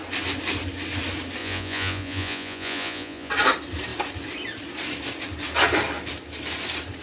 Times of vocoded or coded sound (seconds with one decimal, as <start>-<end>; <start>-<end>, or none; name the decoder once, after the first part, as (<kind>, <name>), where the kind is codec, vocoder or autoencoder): 1.4-3.3 (vocoder, Vocos)